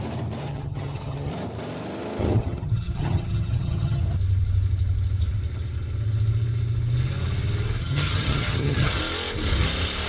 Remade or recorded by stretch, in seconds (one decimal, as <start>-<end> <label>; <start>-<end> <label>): 0.0-0.5 recorded; 0.5-1.3 remade; 1.3-2.2 recorded; 2.2-4.0 remade; 4.0-7.8 recorded; 7.8-9.0 remade; 9.0-10.1 recorded